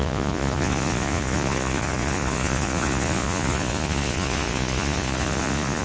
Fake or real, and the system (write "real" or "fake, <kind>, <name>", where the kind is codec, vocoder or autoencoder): fake, vocoder, Vocos